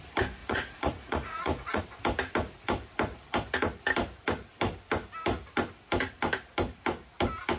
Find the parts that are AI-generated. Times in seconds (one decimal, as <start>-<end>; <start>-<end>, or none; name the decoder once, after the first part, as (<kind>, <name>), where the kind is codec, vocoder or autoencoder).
0.4-1.8 (vocoder, Vocos)